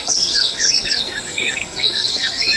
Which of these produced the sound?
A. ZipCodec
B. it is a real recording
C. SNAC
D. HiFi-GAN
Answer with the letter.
C